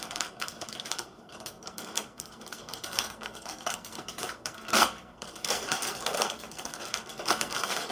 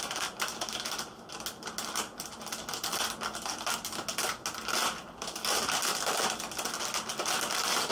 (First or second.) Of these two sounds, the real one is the second